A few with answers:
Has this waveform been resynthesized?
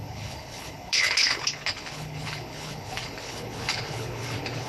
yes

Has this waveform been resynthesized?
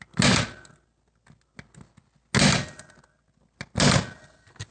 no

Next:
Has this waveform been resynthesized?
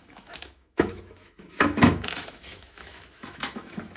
yes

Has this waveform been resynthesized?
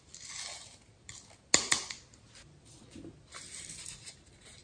no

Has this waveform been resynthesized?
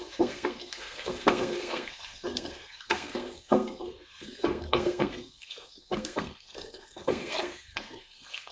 yes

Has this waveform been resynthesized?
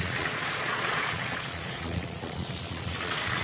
yes